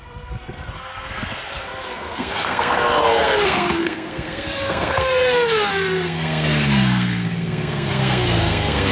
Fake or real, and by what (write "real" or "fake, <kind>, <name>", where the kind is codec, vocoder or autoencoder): fake, codec, SNAC